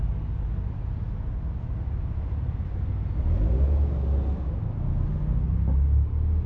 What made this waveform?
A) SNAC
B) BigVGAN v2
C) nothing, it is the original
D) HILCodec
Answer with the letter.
C